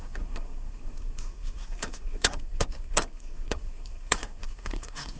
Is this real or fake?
fake